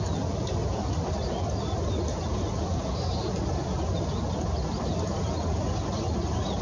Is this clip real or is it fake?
real